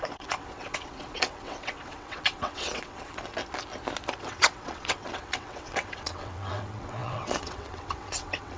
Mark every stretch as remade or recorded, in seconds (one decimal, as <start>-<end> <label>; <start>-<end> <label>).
0.0-3.4 remade; 3.4-4.2 recorded; 4.2-8.6 remade